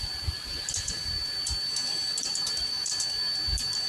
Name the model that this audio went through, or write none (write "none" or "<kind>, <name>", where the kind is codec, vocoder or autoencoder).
vocoder, BigVGAN v2